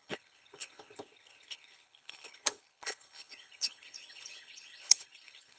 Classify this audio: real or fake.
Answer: fake